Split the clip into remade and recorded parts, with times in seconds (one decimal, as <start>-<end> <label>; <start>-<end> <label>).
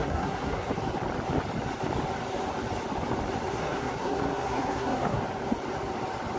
0.0-0.7 remade; 0.7-3.5 recorded; 3.5-5.2 remade; 5.2-6.4 recorded